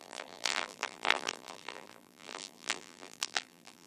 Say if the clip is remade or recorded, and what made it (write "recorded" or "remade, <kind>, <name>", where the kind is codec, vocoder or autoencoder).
remade, vocoder, BigVGAN v2